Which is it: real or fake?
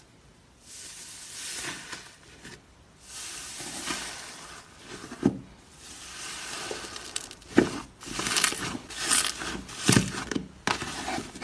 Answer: real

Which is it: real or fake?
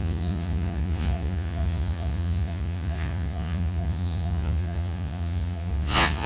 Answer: fake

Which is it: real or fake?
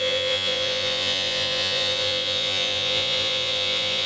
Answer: fake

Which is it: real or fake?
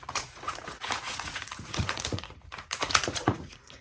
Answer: fake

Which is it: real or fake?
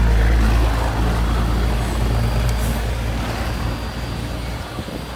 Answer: real